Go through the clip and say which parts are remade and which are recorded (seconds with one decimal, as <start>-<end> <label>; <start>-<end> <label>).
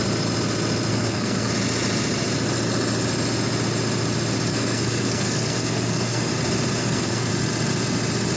0.0-0.9 recorded; 0.9-1.5 remade; 1.5-4.5 recorded; 4.5-6.3 remade; 6.3-6.8 recorded; 6.8-7.3 remade; 7.3-8.4 recorded